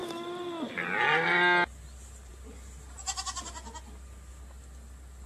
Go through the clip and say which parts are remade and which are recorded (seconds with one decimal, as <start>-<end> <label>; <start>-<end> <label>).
0.0-5.3 recorded